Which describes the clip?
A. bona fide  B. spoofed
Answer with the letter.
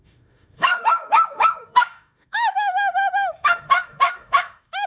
B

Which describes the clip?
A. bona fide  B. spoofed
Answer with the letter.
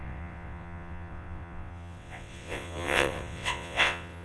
B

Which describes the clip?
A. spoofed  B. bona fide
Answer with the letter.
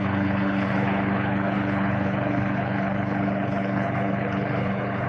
A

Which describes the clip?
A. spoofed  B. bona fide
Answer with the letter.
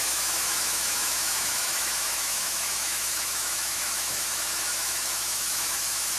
A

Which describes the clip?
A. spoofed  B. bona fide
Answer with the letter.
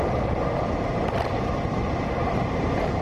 B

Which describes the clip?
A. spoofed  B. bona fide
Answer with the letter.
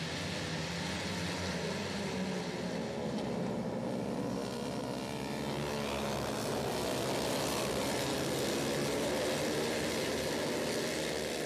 B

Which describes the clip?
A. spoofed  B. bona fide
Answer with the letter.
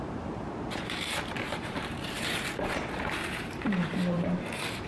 A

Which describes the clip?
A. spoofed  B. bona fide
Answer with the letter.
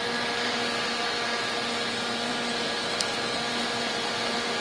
A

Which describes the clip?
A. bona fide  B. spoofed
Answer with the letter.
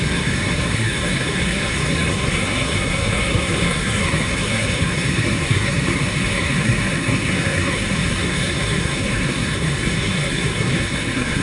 B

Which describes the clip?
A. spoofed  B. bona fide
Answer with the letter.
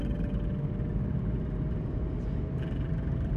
B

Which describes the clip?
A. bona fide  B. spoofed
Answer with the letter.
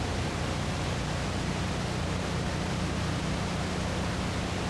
A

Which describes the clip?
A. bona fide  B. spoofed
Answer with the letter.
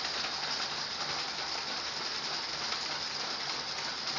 A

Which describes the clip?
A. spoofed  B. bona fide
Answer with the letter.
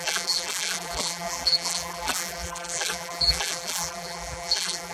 A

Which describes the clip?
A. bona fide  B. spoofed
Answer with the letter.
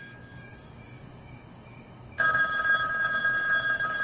B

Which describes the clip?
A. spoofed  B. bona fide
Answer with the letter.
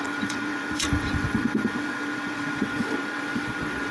A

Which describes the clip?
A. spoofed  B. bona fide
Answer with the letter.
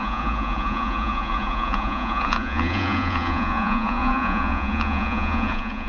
A